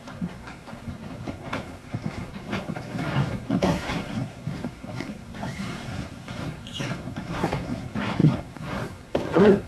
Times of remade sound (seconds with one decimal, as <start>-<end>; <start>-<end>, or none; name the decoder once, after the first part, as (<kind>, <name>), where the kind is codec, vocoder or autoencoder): 0.0-9.7 (codec, SNAC)